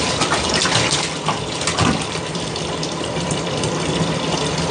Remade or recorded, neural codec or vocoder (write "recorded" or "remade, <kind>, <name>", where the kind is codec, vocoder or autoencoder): recorded